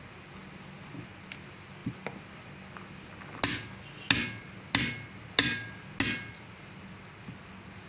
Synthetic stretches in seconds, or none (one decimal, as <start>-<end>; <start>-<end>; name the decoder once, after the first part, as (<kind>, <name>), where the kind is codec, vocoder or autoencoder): none